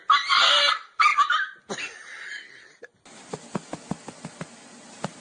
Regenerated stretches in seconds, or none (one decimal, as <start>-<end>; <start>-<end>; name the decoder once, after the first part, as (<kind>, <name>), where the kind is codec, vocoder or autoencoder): none